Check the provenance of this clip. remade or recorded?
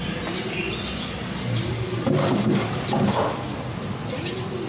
recorded